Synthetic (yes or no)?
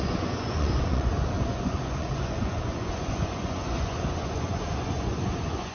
yes